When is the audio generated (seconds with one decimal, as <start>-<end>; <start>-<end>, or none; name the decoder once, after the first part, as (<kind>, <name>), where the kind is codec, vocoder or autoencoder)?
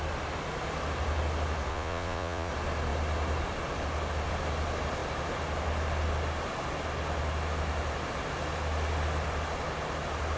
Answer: 1.7-2.5 (vocoder, Vocos)